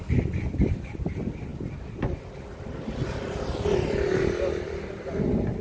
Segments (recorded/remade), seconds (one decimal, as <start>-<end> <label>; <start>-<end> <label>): 0.0-5.6 recorded